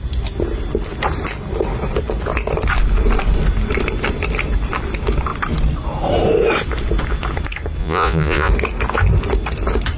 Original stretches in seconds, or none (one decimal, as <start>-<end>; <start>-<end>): 0.0-7.8; 8.5-10.0